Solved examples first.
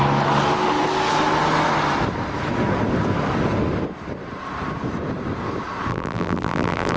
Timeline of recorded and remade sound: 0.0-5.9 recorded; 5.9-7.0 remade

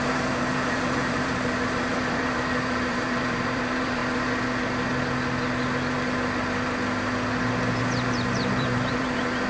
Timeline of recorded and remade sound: 0.0-4.0 remade; 4.0-7.8 recorded; 7.8-9.5 remade

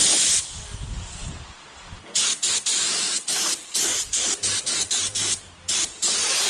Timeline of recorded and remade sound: 0.0-2.7 recorded; 2.7-5.4 remade; 5.4-6.5 recorded

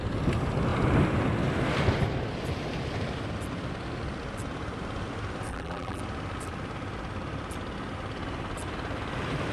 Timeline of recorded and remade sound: 0.0-5.5 recorded; 5.5-6.0 remade; 6.0-9.5 recorded